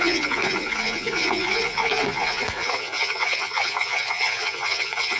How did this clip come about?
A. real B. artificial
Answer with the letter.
B